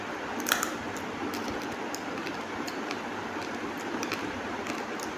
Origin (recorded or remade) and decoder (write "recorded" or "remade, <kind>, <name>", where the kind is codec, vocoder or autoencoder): remade, vocoder, BigVGAN v2